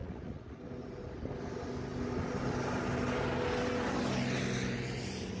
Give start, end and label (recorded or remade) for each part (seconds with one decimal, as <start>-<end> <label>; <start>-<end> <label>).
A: 0.0-0.6 remade; 0.6-5.4 recorded

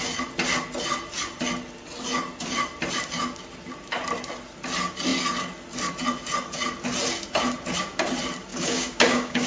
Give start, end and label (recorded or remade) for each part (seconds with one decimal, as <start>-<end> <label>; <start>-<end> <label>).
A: 0.0-8.5 recorded; 8.5-9.5 remade

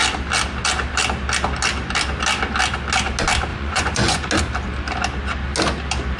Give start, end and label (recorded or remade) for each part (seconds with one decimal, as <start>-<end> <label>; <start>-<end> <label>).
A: 0.0-3.5 recorded; 3.5-4.3 remade; 4.3-6.2 recorded

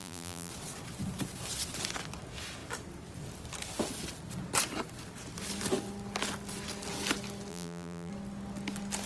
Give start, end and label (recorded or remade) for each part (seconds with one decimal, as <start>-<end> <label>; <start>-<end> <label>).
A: 0.0-0.5 remade; 0.5-7.5 recorded; 7.5-8.1 remade; 8.1-9.1 recorded

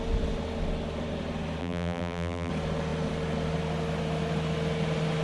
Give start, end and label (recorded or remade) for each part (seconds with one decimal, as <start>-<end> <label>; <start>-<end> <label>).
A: 0.0-1.6 recorded; 1.6-2.5 remade; 2.5-5.2 recorded

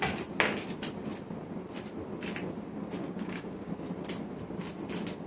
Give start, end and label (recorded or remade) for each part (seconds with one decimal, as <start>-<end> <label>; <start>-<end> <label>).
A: 0.0-3.0 recorded; 3.0-3.7 remade; 3.7-5.3 recorded

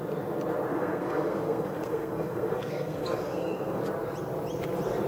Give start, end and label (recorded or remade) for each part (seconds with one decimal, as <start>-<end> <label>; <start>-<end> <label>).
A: 0.0-0.7 recorded; 0.7-3.8 remade; 3.8-5.1 recorded

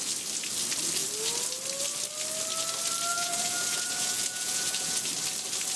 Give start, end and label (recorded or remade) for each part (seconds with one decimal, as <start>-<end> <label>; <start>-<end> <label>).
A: 0.0-3.1 recorded; 3.1-5.1 remade; 5.1-5.8 recorded